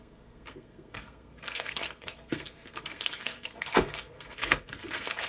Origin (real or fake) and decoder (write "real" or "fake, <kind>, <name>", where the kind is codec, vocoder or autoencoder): fake, codec, SNAC